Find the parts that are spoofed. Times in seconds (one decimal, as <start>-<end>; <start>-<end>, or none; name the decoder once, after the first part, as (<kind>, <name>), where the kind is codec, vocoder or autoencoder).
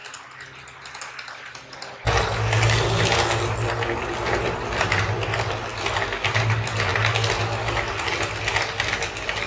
none